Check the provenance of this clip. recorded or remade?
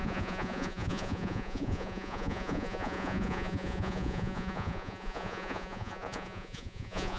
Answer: remade